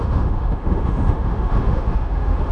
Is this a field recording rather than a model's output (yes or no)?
no